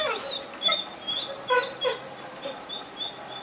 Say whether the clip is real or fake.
real